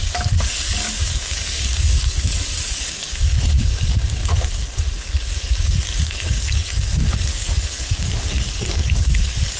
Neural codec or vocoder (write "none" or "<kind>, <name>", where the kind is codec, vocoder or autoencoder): codec, DAC